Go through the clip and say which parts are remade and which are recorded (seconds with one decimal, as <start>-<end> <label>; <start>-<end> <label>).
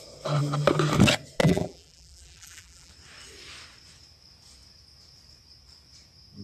0.0-1.4 recorded; 1.4-2.9 remade; 2.9-6.4 recorded